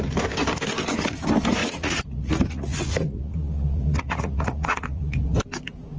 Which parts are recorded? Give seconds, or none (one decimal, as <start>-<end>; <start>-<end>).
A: 0.0-1.6; 5.2-6.0